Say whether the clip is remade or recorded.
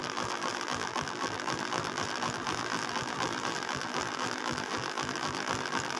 remade